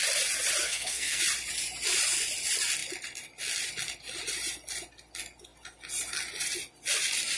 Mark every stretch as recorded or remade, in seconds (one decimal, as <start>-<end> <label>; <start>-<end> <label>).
0.0-0.6 recorded; 0.6-1.2 remade; 1.2-7.4 recorded